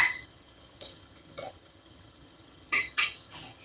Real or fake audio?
fake